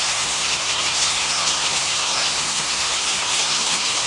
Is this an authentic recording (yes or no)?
no